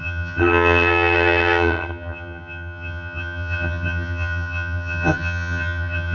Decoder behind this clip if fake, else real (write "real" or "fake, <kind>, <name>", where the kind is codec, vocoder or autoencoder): fake, vocoder, HiFi-GAN